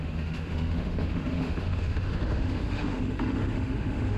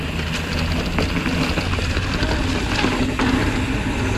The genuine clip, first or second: second